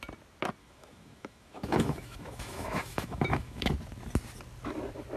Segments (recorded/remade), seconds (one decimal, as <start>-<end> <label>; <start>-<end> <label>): 0.0-0.6 recorded; 0.6-3.7 remade; 3.7-5.2 recorded